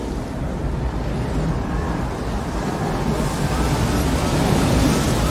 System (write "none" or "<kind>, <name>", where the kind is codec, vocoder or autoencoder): none